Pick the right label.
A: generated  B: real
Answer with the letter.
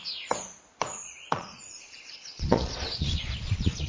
A